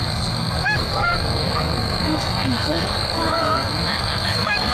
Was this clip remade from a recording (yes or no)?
yes